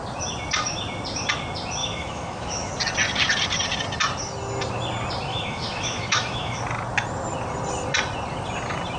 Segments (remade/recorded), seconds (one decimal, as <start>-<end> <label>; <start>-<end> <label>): 0.0-1.8 recorded; 1.8-2.7 remade; 2.7-5.3 recorded; 5.3-6.6 remade; 6.6-9.0 recorded